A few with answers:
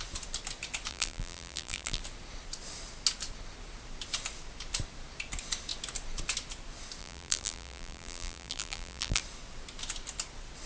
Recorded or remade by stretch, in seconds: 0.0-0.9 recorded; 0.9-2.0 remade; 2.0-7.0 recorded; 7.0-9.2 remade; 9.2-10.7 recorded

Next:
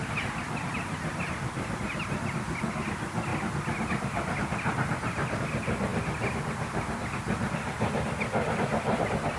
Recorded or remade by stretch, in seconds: 0.0-5.9 recorded; 5.9-9.0 remade; 9.0-9.4 recorded

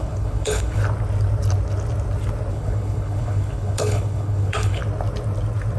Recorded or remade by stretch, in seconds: 0.0-0.8 remade; 0.8-2.5 recorded; 2.5-4.8 remade; 4.8-5.8 recorded

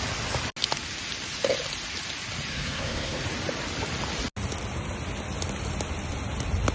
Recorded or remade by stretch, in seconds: 0.0-2.5 recorded; 2.5-3.2 remade; 3.2-6.7 recorded

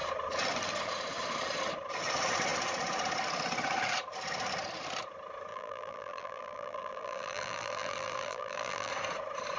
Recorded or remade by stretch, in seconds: 0.0-5.5 recorded; 5.5-8.9 remade; 8.9-9.6 recorded

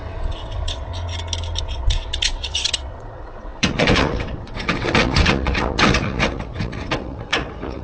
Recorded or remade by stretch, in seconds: 0.0-0.9 remade; 0.9-1.6 recorded; 1.6-7.8 remade

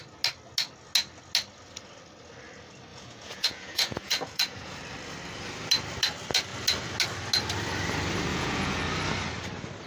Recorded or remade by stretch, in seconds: 0.0-2.9 recorded; 2.9-4.8 remade; 4.8-8.3 recorded; 8.3-8.8 remade; 8.8-9.9 recorded

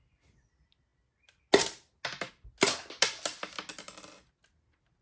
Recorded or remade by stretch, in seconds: 0.0-5.0 recorded